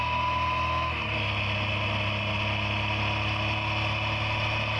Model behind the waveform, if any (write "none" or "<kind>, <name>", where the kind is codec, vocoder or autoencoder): none